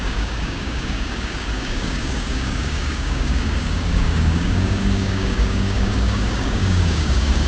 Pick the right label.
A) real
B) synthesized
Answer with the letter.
B